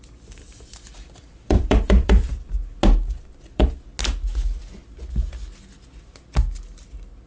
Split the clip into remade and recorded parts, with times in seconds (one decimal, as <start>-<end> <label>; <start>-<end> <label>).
0.0-2.3 remade; 2.3-3.2 recorded; 3.2-3.9 remade; 3.9-7.3 recorded